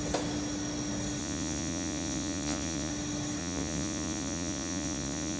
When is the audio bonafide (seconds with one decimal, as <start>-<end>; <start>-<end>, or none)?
0.0-1.2; 2.9-3.4